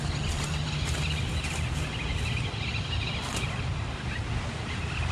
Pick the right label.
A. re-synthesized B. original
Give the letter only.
B